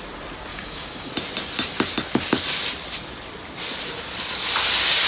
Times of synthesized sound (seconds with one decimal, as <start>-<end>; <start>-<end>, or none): 0.5-1.1

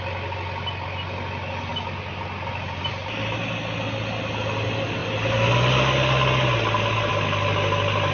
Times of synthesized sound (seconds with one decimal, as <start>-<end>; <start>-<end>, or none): none

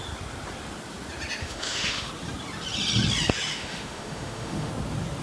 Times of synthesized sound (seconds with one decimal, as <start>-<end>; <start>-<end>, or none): 1.4-2.1; 3.5-4.7

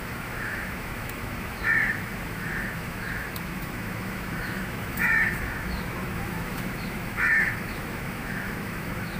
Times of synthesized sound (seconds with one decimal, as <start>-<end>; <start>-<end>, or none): 0.0-9.2

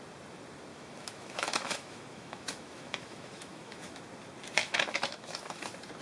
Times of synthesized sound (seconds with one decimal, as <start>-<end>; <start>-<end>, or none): 0.7-4.0; 4.6-5.6